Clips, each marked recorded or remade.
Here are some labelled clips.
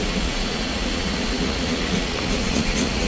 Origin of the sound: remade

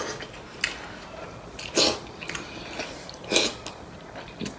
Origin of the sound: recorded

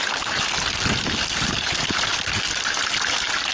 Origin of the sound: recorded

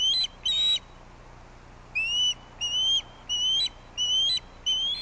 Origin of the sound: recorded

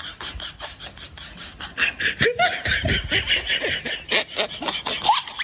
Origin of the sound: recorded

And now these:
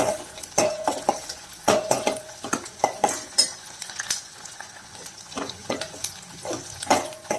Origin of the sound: remade